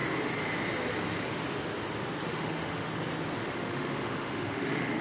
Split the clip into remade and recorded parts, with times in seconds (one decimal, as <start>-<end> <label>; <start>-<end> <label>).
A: 0.0-2.3 recorded; 2.3-2.9 remade; 2.9-3.4 recorded; 3.4-5.0 remade